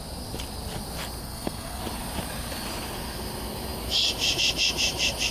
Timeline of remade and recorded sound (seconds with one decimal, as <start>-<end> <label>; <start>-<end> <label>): 0.0-1.2 recorded; 1.2-1.8 remade; 1.8-5.3 recorded